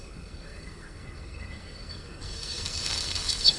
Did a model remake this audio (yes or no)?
yes